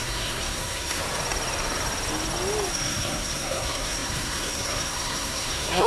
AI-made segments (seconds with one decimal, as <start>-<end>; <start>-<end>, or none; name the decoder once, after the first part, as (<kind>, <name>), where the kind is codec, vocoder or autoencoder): 0.0-1.0 (codec, SNAC); 2.7-5.9